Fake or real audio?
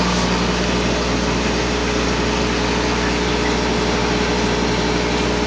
real